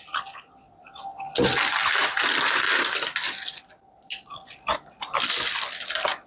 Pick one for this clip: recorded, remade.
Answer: recorded